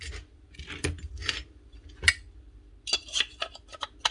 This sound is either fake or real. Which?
real